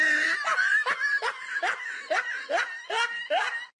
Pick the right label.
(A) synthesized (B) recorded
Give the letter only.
B